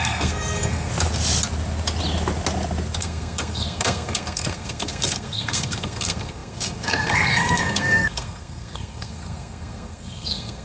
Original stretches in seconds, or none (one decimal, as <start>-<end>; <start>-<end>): 0.9-3.0